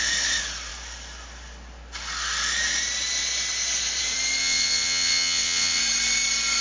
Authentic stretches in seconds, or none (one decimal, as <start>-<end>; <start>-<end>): 0.0-4.4; 5.8-6.6

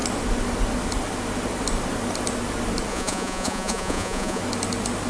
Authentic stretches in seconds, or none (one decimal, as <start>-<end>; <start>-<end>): 0.0-2.9; 4.4-5.1

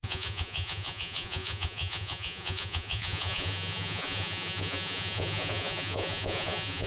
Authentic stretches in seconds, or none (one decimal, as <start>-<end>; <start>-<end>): none

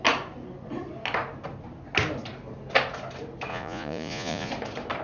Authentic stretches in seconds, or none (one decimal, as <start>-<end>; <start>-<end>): 0.0-3.5; 4.5-5.0

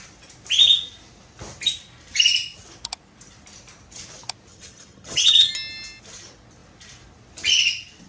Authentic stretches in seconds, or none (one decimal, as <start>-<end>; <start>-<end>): 0.0-4.5; 5.5-8.1

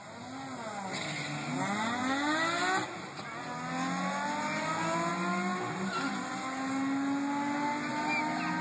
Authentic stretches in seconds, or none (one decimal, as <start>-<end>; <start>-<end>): 0.0-8.6

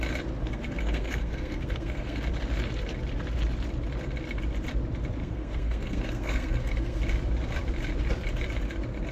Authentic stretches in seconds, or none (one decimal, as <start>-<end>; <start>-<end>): 0.0-0.4; 2.2-5.2; 7.0-9.1